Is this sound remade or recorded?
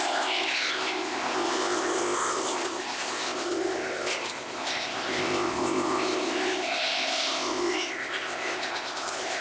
remade